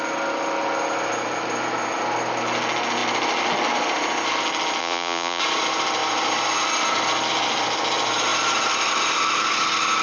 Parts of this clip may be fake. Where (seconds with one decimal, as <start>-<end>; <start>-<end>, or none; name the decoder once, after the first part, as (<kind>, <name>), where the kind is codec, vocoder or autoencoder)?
4.8-5.4 (vocoder, Vocos)